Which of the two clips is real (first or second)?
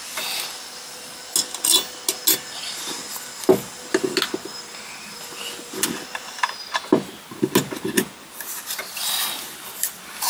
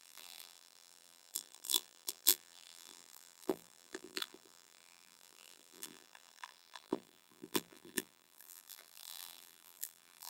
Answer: first